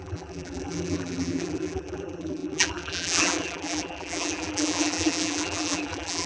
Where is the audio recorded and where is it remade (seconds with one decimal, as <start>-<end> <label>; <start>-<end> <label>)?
0.0-6.3 remade